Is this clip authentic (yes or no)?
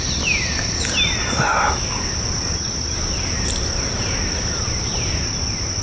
yes